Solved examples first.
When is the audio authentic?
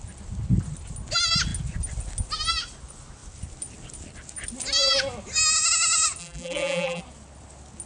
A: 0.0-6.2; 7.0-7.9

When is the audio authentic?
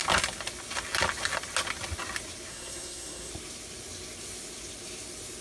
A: 0.0-2.5; 3.3-5.4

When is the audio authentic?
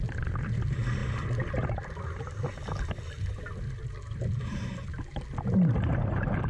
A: 0.0-6.5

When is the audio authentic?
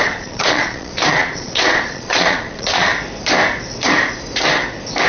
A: 2.9-5.1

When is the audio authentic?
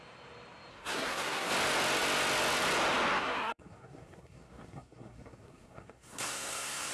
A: 0.0-0.7; 1.5-3.2